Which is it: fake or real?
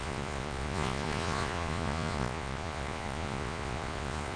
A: fake